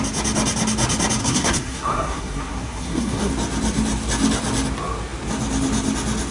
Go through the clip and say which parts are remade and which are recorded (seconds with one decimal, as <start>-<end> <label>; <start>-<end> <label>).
0.0-1.2 recorded; 1.2-3.3 remade; 3.3-6.3 recorded

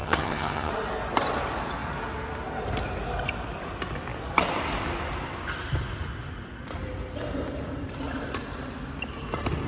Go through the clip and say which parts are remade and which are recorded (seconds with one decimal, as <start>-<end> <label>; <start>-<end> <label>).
0.0-0.7 remade; 0.7-9.7 recorded

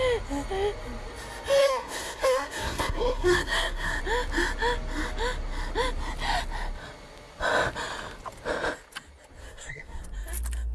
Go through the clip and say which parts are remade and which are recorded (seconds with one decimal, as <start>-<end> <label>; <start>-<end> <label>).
0.0-1.6 recorded; 1.6-4.0 remade; 4.0-9.4 recorded; 9.4-10.0 remade; 10.0-10.7 recorded

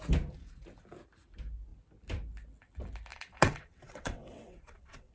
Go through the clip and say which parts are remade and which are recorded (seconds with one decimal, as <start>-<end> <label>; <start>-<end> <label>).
0.0-3.1 recorded; 3.1-5.1 remade